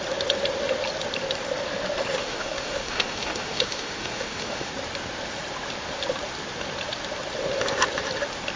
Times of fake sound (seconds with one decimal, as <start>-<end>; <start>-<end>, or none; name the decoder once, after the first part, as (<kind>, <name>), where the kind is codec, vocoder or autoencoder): 2.2-4.7 (autoencoder, DAC-VAE)